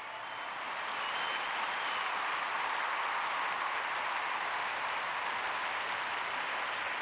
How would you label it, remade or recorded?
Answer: recorded